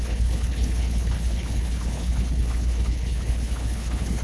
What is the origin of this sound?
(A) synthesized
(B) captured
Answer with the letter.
A